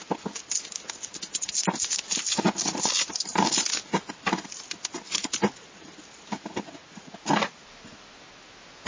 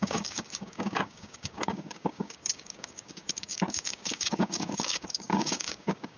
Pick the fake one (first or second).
second